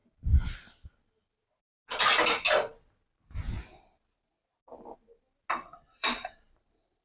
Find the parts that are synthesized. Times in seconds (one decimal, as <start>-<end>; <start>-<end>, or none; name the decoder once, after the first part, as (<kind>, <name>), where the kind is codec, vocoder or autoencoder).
5.9-7.0 (vocoder, BigVGAN v2)